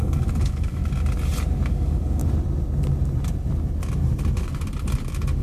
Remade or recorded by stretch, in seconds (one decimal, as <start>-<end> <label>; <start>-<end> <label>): 0.0-0.8 remade; 0.8-1.7 recorded; 1.7-2.2 remade; 2.2-5.4 recorded